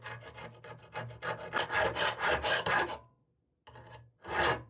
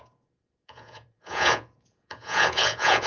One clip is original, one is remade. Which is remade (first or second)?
second